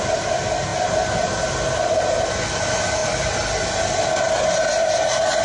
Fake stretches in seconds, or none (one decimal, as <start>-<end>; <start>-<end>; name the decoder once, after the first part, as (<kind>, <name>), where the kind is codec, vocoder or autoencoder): none